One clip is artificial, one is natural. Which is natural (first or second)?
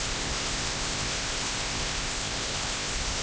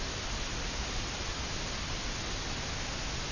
second